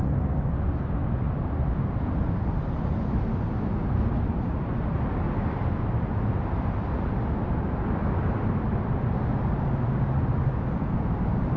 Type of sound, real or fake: real